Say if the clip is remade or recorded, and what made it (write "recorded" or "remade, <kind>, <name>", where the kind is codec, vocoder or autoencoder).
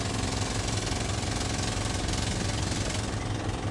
recorded